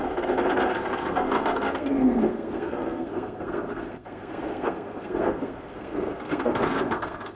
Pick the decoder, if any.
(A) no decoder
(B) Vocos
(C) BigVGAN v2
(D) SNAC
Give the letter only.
D